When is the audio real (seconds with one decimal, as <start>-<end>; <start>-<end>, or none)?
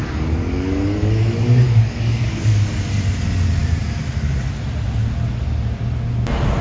2.8-6.6